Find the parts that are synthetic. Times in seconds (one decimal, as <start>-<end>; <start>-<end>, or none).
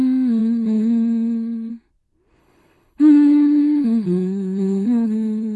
0.4-1.7; 2.4-5.6